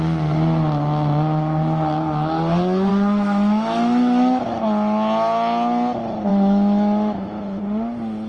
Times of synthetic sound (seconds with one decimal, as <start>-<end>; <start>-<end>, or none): 2.9-4.6; 6.3-7.6